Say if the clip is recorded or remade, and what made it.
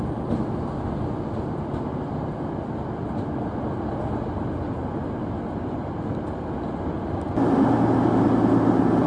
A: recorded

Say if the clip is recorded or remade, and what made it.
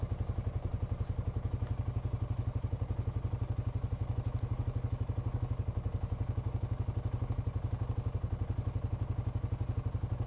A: recorded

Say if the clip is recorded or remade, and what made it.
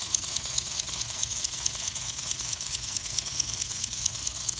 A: remade, codec, SNAC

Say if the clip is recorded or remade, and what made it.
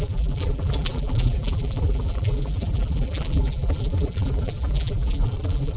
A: remade, vocoder, BigVGAN v2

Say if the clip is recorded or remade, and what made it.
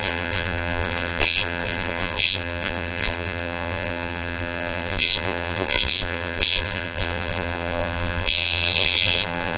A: remade, vocoder, BigVGAN v2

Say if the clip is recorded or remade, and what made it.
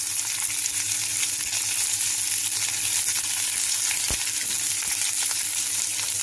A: recorded